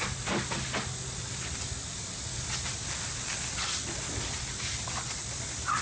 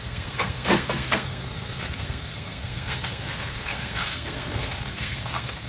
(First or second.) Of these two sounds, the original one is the first